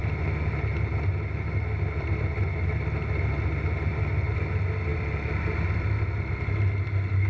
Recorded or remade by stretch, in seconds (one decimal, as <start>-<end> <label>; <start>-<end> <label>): 0.0-7.3 recorded